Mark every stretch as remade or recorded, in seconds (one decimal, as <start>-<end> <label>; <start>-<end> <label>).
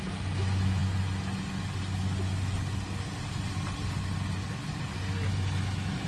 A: 0.0-6.1 recorded